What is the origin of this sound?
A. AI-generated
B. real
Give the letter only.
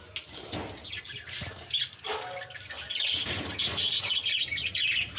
B